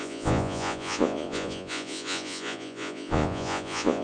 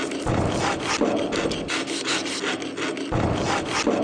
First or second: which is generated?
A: first